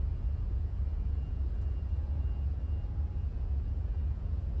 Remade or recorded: remade